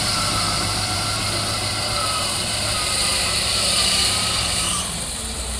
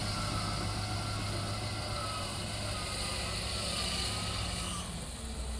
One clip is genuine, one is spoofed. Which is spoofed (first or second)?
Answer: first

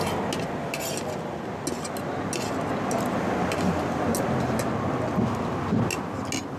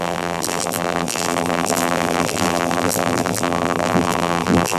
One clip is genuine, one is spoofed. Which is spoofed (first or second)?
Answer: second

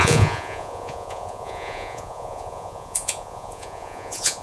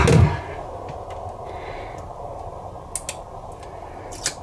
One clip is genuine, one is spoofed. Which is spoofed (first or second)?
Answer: first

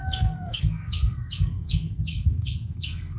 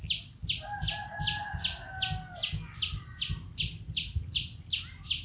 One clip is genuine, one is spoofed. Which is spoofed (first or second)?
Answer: first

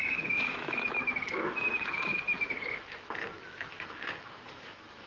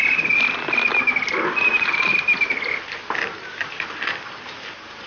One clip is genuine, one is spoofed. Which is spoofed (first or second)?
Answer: first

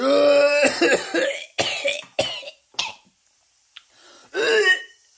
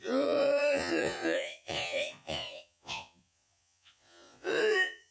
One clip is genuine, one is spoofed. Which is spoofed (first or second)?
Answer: second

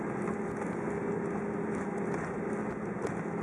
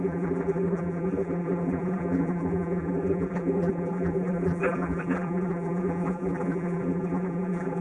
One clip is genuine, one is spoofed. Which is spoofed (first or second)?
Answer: second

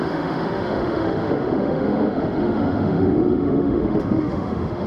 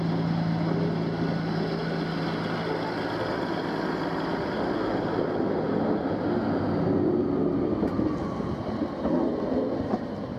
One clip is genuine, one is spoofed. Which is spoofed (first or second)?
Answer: first